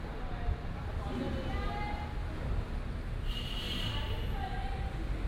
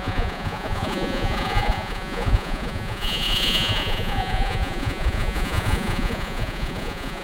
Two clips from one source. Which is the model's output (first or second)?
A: second